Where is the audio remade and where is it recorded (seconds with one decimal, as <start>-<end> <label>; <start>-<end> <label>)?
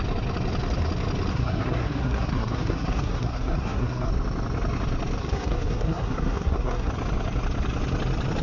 0.0-1.3 recorded; 1.3-4.1 remade; 4.1-5.2 recorded; 5.2-6.9 remade; 6.9-8.4 recorded